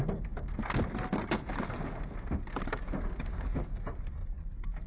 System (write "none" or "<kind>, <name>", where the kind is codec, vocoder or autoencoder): none